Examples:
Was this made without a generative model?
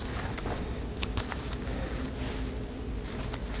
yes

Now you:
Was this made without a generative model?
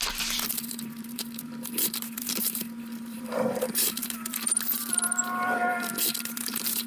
no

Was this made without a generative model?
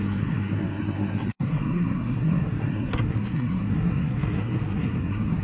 no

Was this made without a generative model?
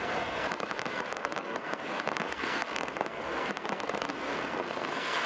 no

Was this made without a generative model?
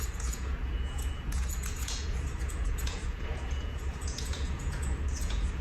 no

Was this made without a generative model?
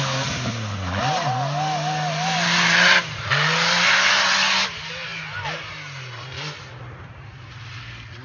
yes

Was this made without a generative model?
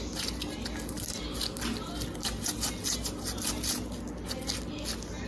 yes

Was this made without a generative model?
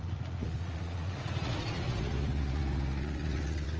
no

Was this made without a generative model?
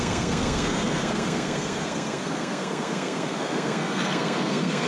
no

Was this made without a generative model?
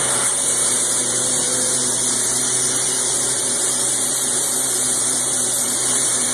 no